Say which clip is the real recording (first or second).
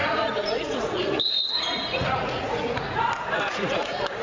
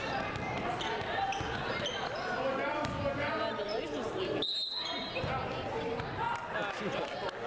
second